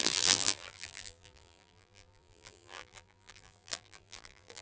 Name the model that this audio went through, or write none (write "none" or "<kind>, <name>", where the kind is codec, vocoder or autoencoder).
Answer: vocoder, BigVGAN v2